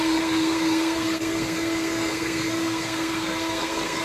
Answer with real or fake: fake